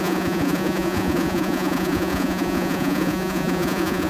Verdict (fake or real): fake